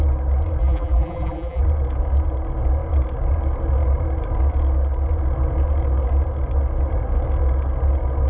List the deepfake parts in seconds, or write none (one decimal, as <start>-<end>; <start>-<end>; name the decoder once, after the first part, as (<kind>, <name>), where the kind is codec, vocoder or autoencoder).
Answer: 0.6-1.6 (vocoder, BigVGAN v2)